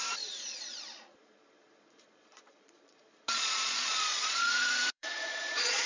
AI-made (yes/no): yes